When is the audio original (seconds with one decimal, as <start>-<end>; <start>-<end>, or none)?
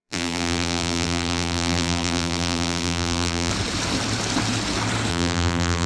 3.5-5.1